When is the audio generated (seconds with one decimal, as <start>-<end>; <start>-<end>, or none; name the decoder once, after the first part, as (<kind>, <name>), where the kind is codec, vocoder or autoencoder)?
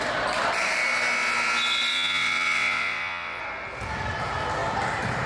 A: 1.9-3.4 (vocoder, WaveNeXt)